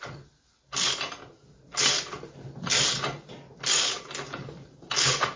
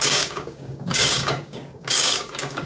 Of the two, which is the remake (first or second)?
second